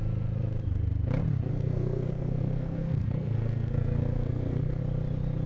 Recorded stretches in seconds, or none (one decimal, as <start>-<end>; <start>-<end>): 0.0-1.5; 4.8-5.5